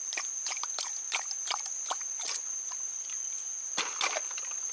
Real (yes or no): yes